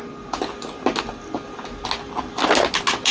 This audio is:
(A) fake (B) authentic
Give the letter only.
B